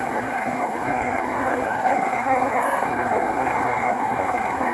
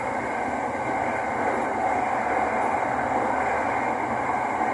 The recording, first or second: second